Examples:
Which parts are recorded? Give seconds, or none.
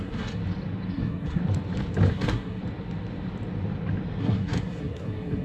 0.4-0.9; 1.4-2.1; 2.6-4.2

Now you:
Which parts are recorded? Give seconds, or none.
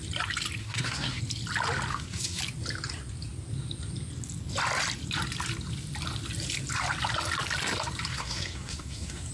0.0-0.6; 1.2-1.9; 2.4-8.1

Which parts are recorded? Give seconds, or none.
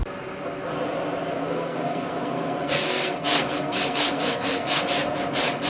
0.0-1.4; 4.8-5.7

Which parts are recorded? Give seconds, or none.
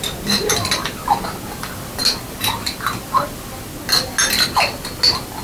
0.0-5.4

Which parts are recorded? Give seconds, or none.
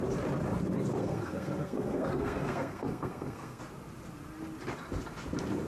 0.0-1.0; 3.6-5.7